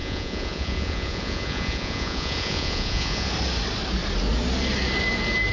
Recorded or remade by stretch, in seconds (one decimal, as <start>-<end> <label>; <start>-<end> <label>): 0.0-3.3 remade; 3.3-5.5 recorded